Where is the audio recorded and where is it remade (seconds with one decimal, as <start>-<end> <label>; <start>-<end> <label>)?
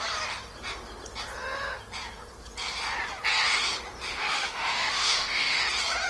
0.0-4.1 recorded; 4.1-5.6 remade; 5.6-6.1 recorded